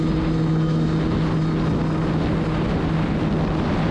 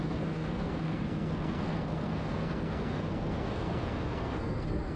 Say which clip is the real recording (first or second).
first